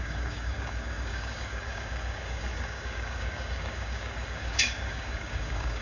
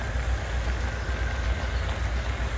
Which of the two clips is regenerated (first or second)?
first